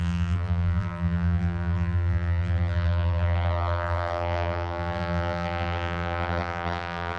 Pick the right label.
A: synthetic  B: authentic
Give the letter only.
A